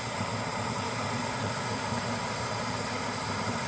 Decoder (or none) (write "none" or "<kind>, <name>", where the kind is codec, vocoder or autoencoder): vocoder, BigVGAN v2